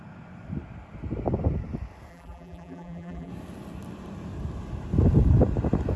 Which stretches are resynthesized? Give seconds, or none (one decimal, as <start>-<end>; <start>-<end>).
2.1-3.3